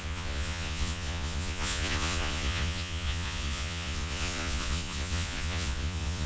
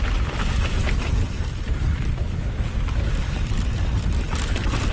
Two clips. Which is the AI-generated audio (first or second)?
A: first